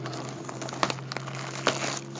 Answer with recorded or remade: recorded